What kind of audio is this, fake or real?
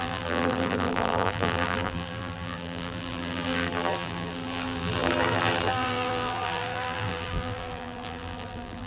fake